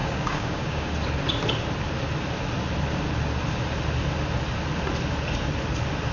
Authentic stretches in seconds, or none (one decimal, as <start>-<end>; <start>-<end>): 0.9-6.1